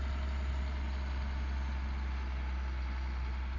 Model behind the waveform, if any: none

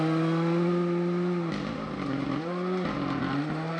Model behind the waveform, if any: none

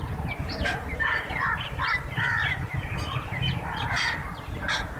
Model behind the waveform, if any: vocoder, BigVGAN v2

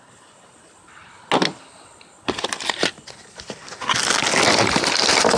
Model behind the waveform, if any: none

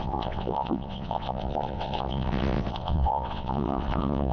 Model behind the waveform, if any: vocoder, WaveNeXt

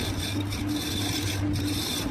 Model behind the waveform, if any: none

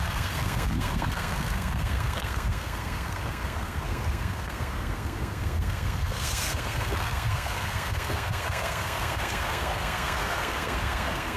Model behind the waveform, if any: codec, SNAC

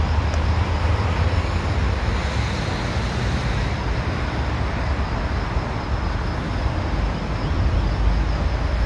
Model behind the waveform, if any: none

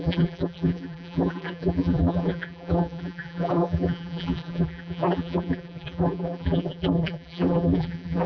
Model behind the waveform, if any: vocoder, BigVGAN v2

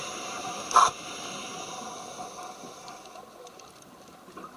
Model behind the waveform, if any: none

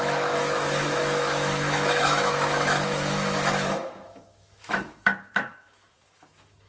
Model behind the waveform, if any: autoencoder, DAC-VAE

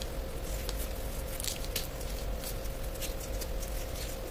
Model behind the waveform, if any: none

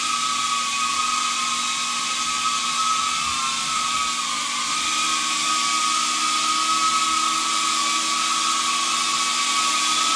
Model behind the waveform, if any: none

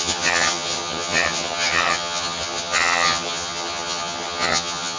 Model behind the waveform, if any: vocoder, HiFi-GAN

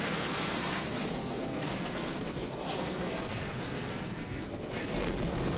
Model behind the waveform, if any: codec, SNAC